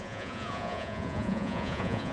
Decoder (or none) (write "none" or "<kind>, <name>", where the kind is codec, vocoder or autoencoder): vocoder, Vocos